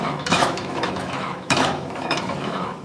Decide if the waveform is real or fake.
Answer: fake